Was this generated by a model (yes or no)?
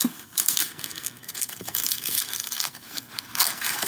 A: yes